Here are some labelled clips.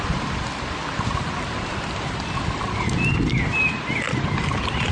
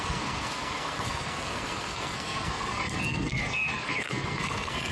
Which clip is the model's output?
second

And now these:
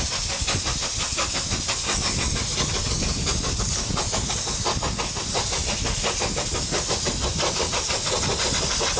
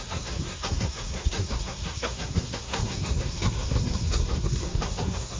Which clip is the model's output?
second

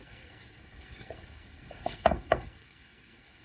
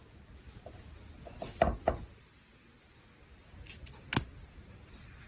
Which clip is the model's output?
first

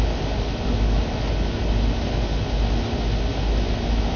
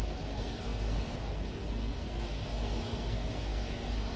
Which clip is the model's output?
second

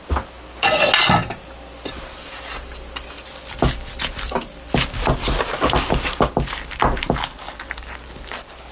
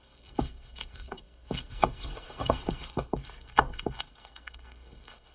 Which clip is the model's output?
second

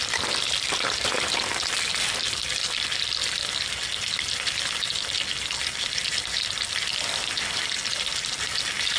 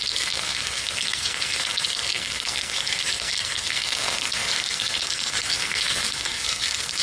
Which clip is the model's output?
second